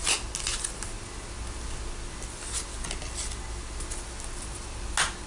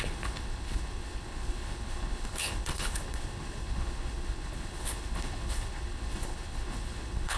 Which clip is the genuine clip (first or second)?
first